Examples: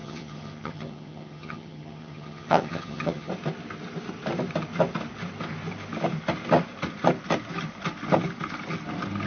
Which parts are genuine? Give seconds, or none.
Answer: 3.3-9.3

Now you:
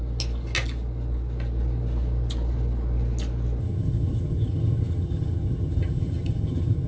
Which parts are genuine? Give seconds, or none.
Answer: 0.0-3.6

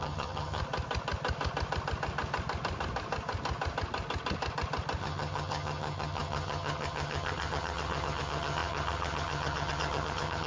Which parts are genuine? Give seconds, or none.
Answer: 0.6-5.0

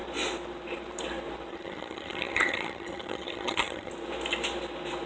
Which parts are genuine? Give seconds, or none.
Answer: 0.0-1.5; 3.9-5.1